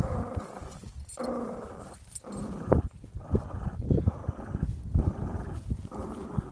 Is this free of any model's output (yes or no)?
yes